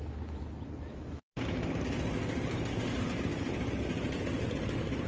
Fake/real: real